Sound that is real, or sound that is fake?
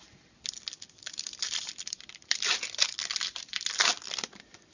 fake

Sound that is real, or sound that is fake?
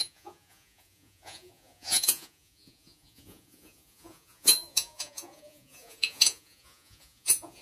fake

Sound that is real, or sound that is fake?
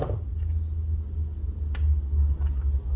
real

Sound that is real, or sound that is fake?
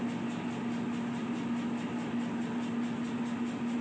real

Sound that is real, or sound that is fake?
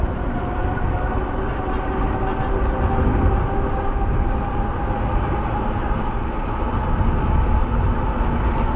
real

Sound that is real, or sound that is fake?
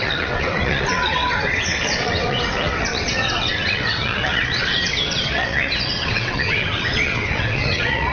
fake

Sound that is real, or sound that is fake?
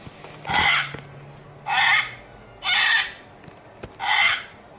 real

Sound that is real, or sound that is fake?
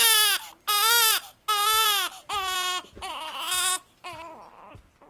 real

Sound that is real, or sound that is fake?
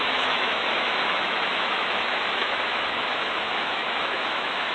fake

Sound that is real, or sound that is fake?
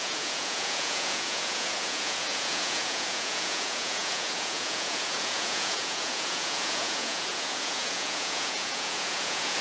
fake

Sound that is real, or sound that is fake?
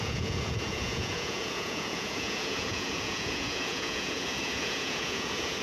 fake